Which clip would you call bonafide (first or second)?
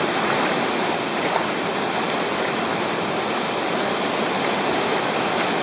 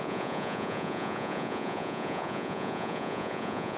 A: first